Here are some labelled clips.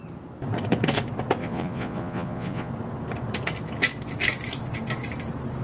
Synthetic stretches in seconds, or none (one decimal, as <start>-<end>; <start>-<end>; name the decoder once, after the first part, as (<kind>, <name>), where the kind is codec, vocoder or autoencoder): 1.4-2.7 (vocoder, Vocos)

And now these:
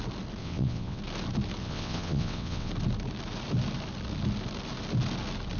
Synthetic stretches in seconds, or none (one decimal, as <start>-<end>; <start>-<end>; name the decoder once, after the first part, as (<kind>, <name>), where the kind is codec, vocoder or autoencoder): 0.4-1.0 (vocoder, WaveNeXt); 1.6-2.7

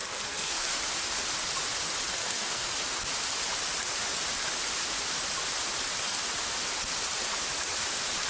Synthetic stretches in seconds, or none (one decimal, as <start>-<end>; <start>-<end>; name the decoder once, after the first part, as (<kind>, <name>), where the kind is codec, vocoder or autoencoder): 0.0-0.8 (codec, SNAC); 2.1-2.7